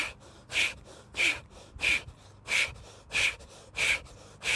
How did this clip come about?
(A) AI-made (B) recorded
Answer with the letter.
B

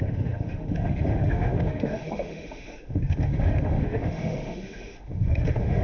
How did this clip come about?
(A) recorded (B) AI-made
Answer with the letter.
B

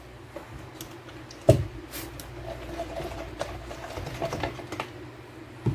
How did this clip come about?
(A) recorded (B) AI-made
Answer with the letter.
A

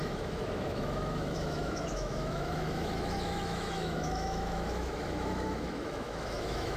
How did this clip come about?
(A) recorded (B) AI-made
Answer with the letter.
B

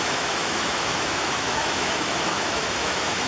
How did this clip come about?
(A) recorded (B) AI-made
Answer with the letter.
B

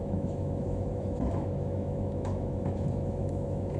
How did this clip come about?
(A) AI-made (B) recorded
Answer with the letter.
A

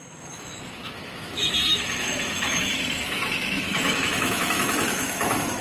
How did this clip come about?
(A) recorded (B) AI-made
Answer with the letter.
B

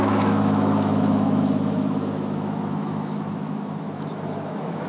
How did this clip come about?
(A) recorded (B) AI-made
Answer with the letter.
B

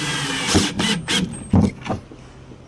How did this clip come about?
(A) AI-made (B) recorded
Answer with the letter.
B